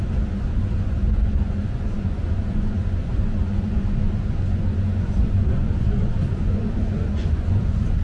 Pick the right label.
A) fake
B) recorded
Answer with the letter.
A